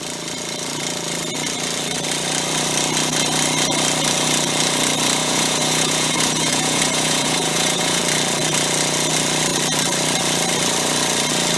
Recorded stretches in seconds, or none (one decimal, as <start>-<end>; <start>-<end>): 0.0-5.2; 8.0-11.6